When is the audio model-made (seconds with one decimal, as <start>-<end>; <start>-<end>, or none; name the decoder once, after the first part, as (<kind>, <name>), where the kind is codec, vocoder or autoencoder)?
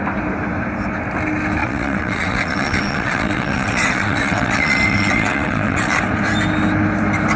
1.6-6.0 (vocoder, WaveNeXt)